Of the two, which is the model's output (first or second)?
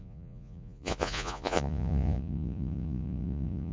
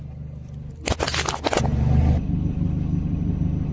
first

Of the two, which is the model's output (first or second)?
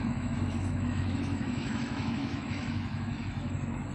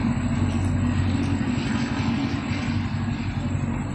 first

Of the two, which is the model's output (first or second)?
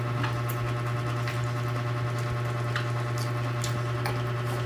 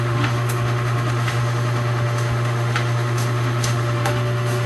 second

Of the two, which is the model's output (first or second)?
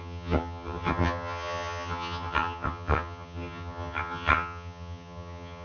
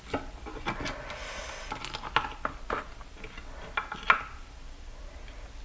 first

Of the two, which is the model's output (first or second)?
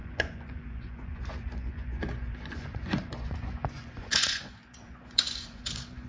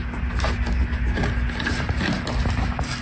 first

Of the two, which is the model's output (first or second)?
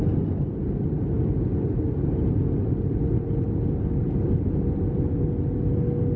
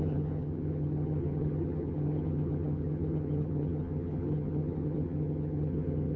second